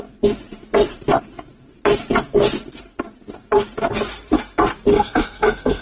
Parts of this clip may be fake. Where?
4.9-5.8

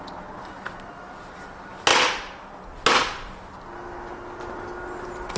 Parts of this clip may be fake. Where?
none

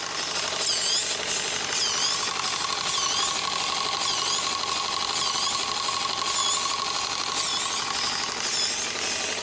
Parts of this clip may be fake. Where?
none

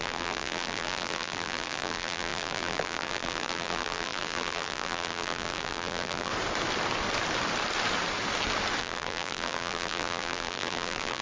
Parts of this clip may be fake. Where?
0.0-6.3; 8.8-11.2